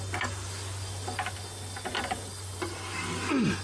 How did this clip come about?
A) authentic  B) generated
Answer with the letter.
A